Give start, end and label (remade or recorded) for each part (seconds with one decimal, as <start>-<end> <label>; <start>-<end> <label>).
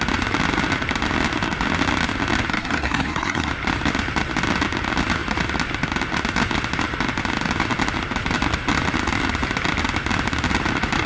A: 0.0-2.5 recorded; 2.5-3.5 remade; 3.5-11.1 recorded